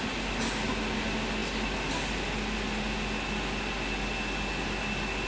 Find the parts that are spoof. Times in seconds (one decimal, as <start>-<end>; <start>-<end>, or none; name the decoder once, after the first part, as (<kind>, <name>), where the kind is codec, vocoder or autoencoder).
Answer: none

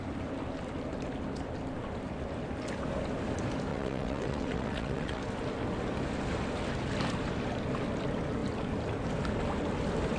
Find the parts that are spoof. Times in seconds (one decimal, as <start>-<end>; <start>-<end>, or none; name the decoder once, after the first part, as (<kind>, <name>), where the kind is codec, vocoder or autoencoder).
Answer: 3.7-5.2 (vocoder, WaveNeXt)

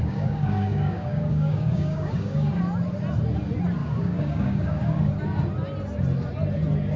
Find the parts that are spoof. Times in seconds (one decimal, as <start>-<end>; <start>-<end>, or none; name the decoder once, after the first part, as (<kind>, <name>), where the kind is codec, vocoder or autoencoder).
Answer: 0.0-2.6 (codec, DAC); 3.8-5.0

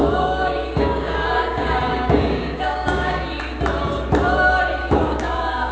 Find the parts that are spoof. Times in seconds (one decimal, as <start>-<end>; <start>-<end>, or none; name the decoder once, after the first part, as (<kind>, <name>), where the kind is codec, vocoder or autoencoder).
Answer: 0.0-3.4 (codec, DAC); 4.8-5.7

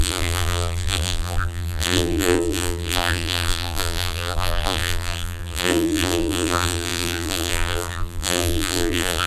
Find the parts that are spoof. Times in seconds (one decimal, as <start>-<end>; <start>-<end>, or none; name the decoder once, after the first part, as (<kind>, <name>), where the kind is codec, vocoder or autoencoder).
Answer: 0.0-9.3 (vocoder, BigVGAN v2)

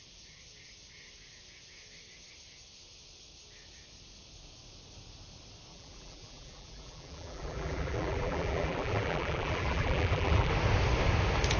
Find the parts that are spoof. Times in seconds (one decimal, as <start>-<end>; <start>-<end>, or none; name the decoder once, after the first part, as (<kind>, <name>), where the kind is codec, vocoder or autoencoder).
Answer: 5.7-10.5 (vocoder, BigVGAN v2)

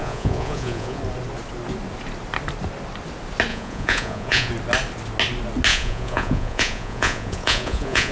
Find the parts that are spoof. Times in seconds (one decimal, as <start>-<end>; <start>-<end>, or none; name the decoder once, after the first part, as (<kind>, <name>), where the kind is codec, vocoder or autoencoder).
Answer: 0.0-1.0 (vocoder, Vocos); 3.5-4.5; 5.7-8.1